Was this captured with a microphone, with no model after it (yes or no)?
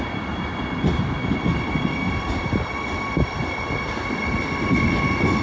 yes